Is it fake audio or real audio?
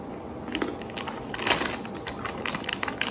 real